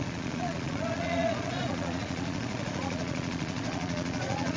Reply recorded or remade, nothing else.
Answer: remade